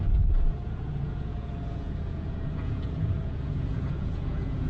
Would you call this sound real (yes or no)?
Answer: no